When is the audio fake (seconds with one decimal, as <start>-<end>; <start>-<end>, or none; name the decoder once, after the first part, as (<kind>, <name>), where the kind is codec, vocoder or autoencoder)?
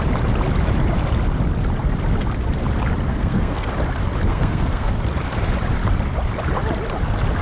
3.1-3.7 (codec, SNAC); 4.3-4.9